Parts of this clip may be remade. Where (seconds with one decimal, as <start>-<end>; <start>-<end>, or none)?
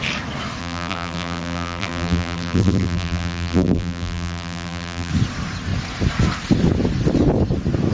0.6-5.1